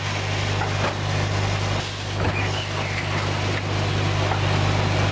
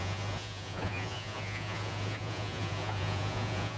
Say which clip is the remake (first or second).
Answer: second